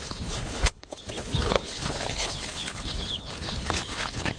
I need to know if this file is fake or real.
fake